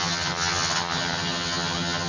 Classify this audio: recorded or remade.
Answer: remade